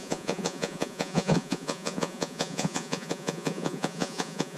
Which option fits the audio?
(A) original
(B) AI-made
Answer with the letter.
B